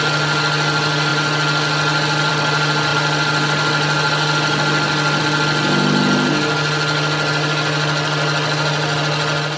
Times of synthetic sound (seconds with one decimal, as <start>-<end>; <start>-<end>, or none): none